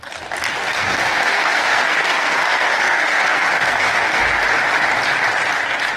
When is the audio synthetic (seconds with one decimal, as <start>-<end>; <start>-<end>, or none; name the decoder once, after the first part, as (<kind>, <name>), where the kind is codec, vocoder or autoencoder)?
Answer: 0.6-4.2 (codec, SNAC)